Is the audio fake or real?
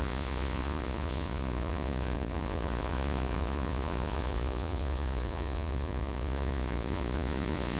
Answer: fake